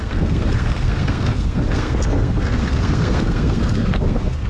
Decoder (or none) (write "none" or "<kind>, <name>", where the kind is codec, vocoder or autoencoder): codec, SNAC